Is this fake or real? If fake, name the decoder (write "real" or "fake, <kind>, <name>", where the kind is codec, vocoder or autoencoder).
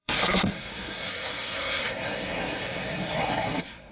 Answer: fake, codec, SNAC